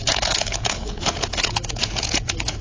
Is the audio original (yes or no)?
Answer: no